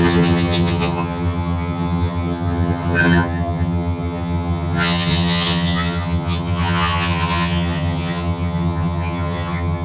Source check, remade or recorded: remade